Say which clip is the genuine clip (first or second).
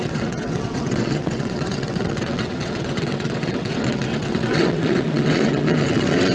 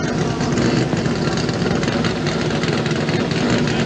second